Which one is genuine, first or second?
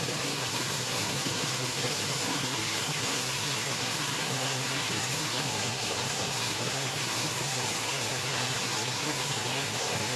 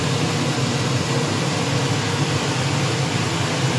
second